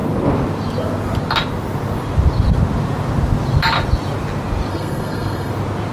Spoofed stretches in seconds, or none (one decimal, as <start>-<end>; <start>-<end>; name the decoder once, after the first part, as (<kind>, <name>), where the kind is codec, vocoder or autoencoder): 4.7-5.5 (codec, SNAC)